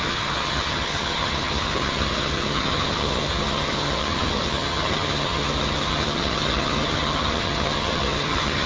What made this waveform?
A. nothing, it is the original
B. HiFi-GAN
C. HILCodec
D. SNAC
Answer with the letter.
B